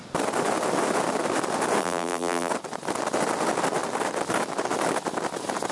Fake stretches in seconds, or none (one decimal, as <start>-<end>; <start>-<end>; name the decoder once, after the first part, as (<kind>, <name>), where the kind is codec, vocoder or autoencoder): 1.8-2.5 (vocoder, BigVGAN v2)